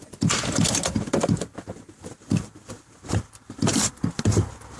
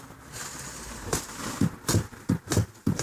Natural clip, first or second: second